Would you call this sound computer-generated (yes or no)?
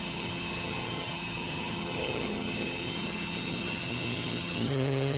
yes